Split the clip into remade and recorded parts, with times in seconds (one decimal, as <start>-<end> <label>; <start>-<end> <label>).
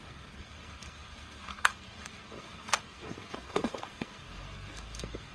0.0-5.3 remade